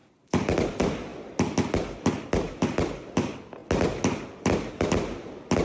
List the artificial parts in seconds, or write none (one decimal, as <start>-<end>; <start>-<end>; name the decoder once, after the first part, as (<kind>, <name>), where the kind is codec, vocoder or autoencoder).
none